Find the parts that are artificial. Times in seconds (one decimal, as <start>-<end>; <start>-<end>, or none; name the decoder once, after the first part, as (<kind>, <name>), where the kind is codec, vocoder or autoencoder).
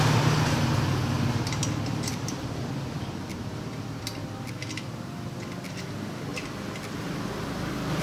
2.1-4.9 (vocoder, BigVGAN v2); 6.3-7.3